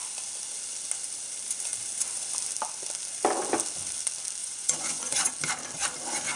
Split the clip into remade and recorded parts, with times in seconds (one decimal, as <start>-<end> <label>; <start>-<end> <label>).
0.0-4.4 recorded; 4.4-5.3 remade; 5.3-6.4 recorded